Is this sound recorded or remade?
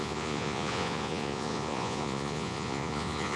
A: remade